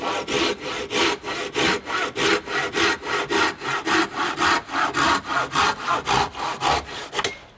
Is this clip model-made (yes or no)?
no